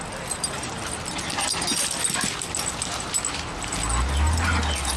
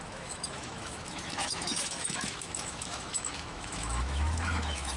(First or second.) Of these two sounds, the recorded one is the first